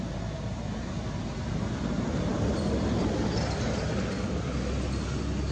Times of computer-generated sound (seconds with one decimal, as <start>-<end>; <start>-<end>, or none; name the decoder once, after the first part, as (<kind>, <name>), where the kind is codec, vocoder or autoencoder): none